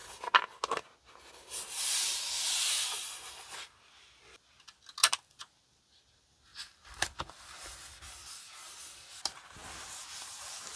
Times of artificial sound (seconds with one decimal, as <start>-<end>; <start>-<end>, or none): 5.0-5.8; 6.5-7.2